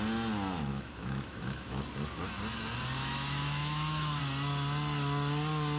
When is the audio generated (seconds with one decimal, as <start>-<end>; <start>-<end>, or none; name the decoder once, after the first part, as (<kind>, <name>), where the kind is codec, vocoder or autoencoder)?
0.7-1.8 (autoencoder, DAC-VAE); 3.0-4.2